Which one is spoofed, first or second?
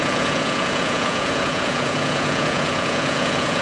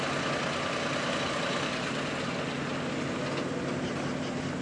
first